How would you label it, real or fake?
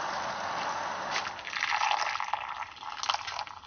real